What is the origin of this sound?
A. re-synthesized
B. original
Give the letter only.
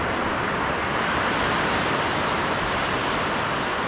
B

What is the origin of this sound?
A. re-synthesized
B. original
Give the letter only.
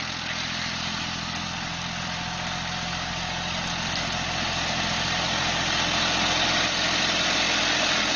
B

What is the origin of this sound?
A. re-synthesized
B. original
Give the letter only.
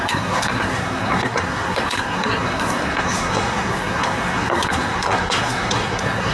A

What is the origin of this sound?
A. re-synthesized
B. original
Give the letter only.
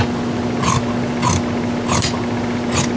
B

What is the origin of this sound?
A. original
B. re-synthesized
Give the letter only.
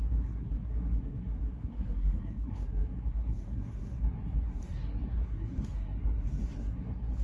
B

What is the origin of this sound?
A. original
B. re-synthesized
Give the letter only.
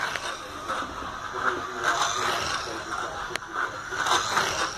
A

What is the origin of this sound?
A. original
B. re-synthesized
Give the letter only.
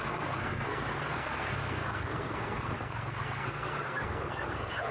B